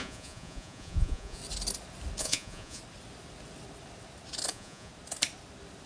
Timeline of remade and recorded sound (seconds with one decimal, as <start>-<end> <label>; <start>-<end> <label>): 0.0-1.4 remade; 1.4-2.2 recorded; 2.2-2.8 remade; 2.8-4.5 recorded; 4.5-4.9 remade; 4.9-5.9 recorded